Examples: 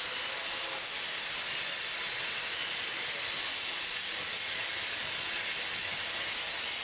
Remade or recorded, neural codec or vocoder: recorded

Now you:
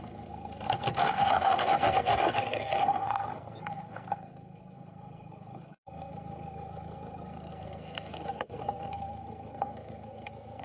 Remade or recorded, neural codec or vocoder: remade, codec, SNAC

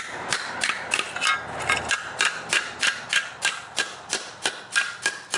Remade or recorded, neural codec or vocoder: recorded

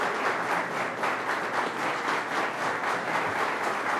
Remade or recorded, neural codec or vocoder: recorded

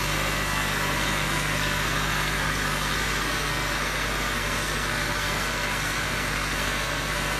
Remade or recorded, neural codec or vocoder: remade, codec, SNAC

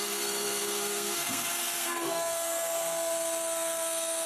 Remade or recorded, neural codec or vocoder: remade, codec, SNAC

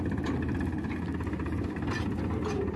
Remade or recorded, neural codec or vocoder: recorded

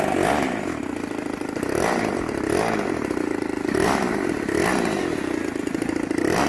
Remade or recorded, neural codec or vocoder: recorded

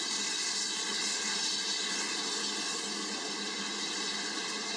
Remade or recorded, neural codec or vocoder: recorded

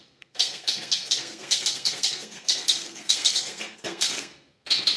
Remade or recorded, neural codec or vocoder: remade, codec, SNAC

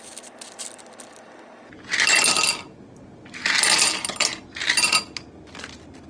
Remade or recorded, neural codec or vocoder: recorded